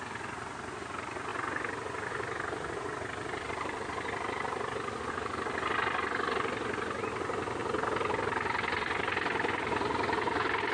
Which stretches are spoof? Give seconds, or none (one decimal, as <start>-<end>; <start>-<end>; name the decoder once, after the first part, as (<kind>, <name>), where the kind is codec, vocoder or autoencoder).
none